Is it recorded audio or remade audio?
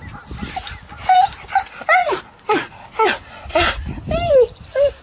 recorded